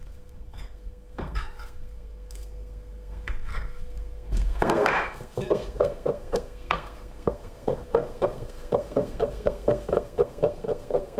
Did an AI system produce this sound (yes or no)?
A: yes